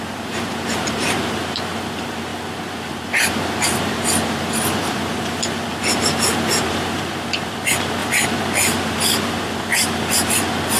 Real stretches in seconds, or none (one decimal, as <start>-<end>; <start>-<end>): none